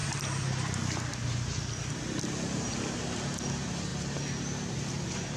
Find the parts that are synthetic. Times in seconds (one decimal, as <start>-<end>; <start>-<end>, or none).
none